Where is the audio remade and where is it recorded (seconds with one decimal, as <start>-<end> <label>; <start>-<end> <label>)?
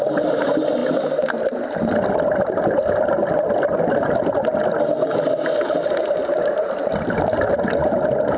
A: 0.0-8.4 recorded